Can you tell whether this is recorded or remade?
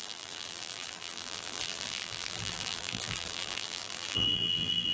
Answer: remade